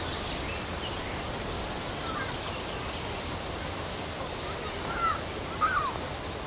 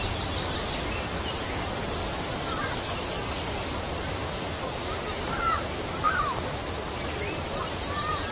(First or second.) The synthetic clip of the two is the second